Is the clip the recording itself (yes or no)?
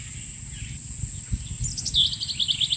yes